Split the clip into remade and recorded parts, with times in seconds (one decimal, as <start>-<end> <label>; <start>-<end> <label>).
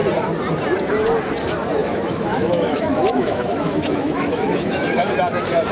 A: 0.0-1.8 recorded; 1.8-5.1 remade; 5.1-5.7 recorded